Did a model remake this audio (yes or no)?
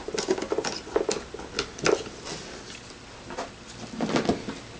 no